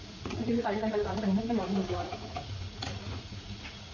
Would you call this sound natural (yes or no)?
no